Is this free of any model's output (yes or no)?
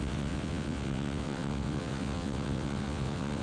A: no